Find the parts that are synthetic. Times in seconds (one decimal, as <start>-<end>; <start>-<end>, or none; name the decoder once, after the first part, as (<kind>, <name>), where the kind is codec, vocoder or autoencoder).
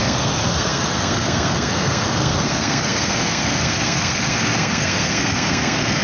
0.0-6.0 (codec, SNAC)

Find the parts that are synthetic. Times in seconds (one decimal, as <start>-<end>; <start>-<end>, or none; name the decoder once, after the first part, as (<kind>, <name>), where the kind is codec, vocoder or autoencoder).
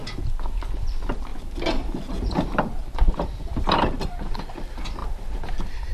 2.8-4.3 (vocoder, BigVGAN v2)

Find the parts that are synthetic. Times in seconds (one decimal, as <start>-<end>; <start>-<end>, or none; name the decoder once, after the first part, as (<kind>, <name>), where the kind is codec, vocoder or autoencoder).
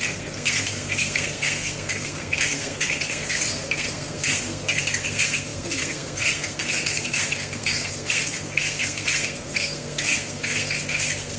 0.0-11.4 (codec, SNAC)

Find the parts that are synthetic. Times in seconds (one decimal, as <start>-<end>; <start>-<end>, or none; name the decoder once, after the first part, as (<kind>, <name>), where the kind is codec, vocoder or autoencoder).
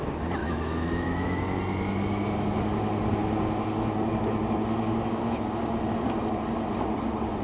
0.4-1.4 (autoencoder, DAC-VAE)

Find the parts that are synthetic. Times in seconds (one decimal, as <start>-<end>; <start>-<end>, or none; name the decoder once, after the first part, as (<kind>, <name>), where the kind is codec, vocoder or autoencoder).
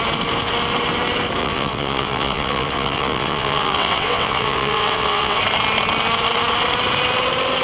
1.4-5.4 (vocoder, WaveNeXt)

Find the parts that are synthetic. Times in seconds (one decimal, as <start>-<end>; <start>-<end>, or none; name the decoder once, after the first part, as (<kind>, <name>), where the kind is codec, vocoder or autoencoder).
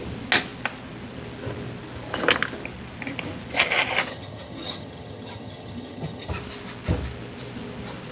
4.1-6.3 (vocoder, HiFi-GAN)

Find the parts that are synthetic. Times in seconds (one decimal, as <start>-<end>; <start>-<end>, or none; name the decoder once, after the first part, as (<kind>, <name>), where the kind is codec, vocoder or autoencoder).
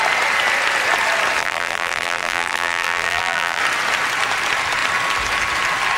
1.4-3.6 (vocoder, BigVGAN v2)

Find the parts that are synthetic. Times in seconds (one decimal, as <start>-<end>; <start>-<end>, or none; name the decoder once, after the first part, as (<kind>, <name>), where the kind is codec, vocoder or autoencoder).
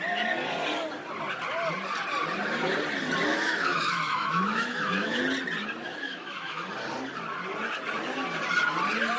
3.3-5.2 (autoencoder, DAC-VAE); 5.8-6.7